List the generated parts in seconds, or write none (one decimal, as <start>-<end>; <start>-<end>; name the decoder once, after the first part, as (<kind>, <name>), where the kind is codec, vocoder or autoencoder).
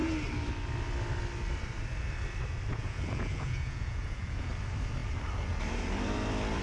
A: 2.7-4.5 (vocoder, Vocos)